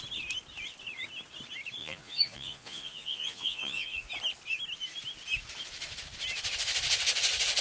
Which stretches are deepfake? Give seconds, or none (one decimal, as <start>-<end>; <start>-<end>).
1.8-4.1